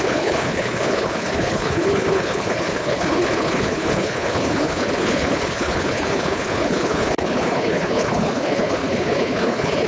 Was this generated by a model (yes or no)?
yes